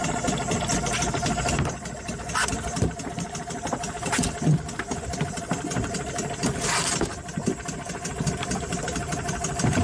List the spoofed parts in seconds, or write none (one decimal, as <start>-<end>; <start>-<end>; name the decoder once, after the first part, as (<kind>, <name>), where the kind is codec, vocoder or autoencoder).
0.8-9.8 (vocoder, BigVGAN v2)